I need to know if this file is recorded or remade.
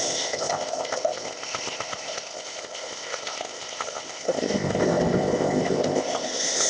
remade